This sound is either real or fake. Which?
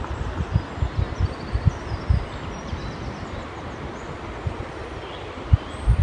real